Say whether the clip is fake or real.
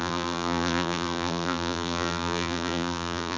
fake